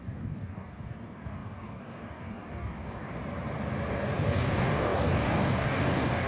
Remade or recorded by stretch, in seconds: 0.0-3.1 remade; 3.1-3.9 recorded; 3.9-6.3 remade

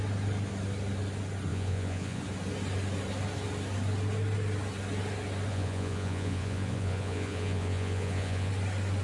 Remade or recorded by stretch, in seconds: 0.0-1.5 recorded; 1.5-2.2 remade; 2.2-5.5 recorded; 5.5-8.5 remade; 8.5-9.0 recorded